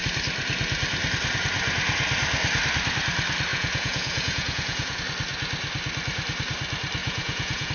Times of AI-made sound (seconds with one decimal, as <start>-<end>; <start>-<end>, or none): 3.5-5.0; 7.0-7.7